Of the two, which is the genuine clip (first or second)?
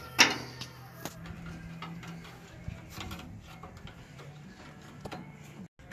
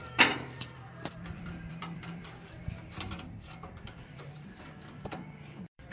first